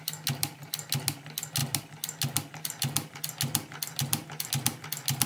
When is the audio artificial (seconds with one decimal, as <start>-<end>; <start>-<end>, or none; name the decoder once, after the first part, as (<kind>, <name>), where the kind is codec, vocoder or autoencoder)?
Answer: none